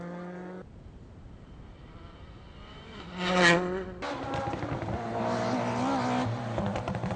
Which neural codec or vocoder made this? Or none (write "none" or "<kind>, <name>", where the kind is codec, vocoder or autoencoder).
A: none